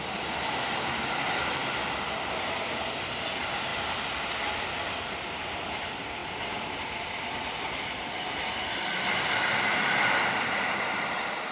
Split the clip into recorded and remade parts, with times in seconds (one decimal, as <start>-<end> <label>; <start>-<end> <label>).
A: 0.0-1.6 remade; 1.6-2.3 recorded; 2.3-3.7 remade; 3.7-5.1 recorded; 5.1-6.2 remade; 6.2-6.8 recorded; 6.8-11.5 remade